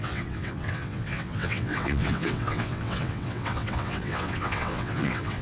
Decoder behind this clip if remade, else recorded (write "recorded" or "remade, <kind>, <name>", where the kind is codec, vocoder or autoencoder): remade, vocoder, WaveNeXt